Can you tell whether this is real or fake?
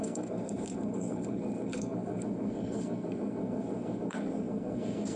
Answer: fake